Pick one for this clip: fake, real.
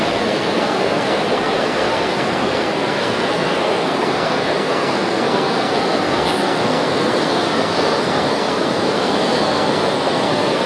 fake